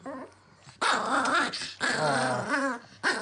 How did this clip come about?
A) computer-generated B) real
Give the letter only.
B